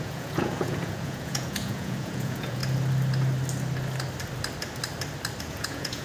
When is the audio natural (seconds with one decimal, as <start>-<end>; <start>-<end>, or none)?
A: 2.6-5.4

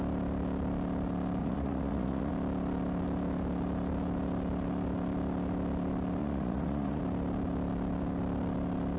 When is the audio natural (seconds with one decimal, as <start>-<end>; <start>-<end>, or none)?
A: 0.0-1.4; 2.3-6.2; 7.0-9.0

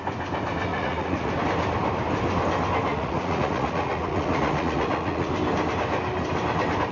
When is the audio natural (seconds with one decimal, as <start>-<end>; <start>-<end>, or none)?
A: 0.0-0.7; 1.3-2.9; 5.3-6.9

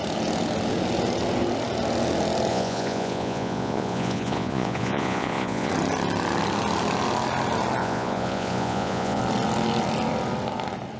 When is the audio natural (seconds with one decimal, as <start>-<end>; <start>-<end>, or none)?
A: 0.0-2.5; 5.7-7.8; 9.2-11.0

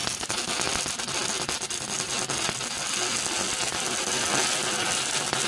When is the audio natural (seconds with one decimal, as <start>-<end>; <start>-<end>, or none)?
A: 0.0-5.5

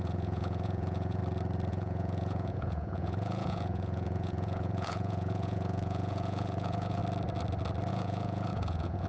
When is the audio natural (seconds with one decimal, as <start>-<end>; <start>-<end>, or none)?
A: 1.2-1.7; 7.0-7.9

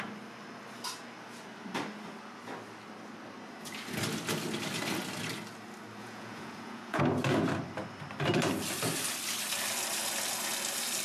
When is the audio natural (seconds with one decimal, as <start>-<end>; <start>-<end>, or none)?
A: 0.0-6.0; 7.0-11.0

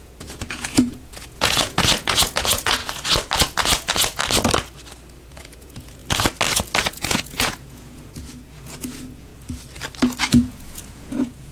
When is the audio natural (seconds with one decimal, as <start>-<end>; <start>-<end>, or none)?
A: 2.8-3.4; 4.2-5.2; 6.0-6.8; 9.3-10.3